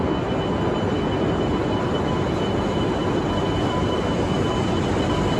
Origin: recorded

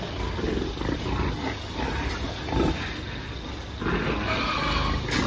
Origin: recorded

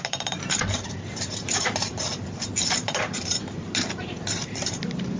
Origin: remade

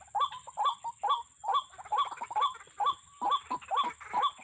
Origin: recorded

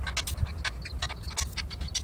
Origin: recorded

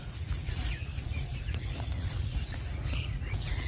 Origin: remade